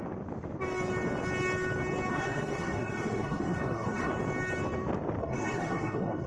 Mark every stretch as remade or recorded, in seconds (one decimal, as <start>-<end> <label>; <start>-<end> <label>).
0.0-2.1 recorded; 2.1-4.1 remade; 4.1-5.2 recorded; 5.2-6.3 remade